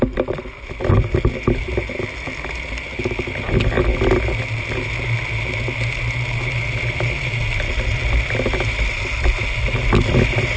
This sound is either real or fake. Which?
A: real